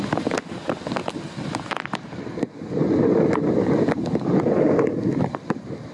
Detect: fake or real fake